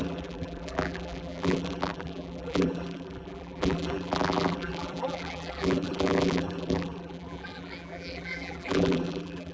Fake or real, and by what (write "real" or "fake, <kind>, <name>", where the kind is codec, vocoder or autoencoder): fake, vocoder, BigVGAN v2